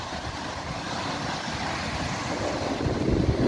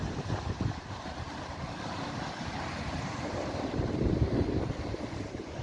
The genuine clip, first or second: first